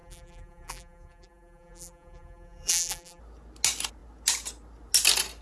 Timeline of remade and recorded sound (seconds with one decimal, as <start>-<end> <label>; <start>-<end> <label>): 0.0-3.2 remade; 3.2-5.4 recorded